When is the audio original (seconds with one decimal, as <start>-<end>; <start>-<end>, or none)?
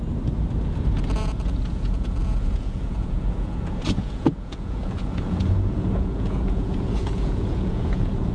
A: 0.0-1.0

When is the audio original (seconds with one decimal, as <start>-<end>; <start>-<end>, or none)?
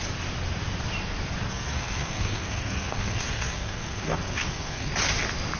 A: 0.0-1.5; 4.9-5.6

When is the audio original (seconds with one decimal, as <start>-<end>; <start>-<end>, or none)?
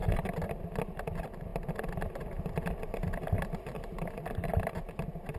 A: 0.0-3.7; 4.5-5.4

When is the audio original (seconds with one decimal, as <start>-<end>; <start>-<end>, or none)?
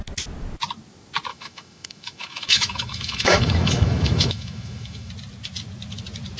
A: 0.0-1.3; 5.1-6.4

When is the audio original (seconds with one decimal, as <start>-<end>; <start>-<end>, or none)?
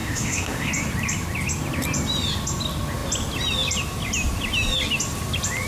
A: 0.7-5.7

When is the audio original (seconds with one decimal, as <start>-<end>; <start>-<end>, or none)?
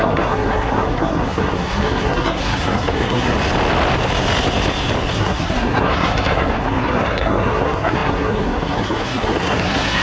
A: 3.3-5.1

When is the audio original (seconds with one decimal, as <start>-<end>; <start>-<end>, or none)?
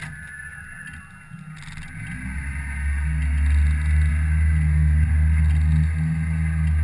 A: 0.0-6.8